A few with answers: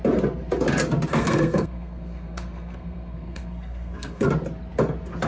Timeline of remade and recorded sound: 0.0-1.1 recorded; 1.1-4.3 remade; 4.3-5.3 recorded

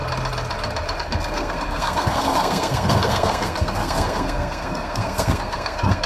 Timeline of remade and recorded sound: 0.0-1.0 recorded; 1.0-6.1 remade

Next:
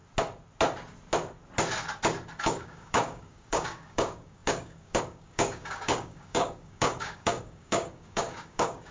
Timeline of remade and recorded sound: 0.0-2.4 recorded; 2.4-8.9 remade

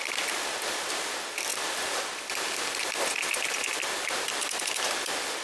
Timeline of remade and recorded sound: 0.0-5.4 recorded

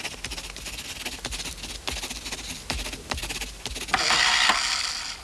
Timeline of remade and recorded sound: 0.0-5.2 recorded

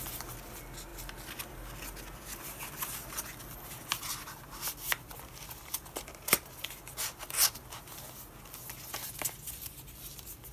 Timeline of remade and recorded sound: 0.0-10.5 recorded